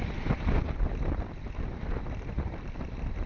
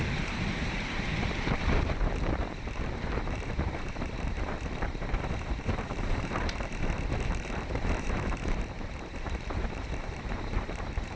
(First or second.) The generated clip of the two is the second